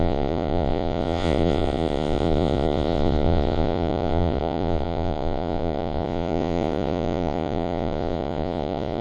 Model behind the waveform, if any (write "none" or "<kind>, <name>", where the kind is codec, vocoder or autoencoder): vocoder, Vocos